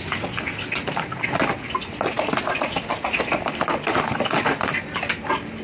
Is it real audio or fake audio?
real